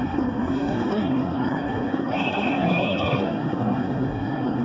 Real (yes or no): no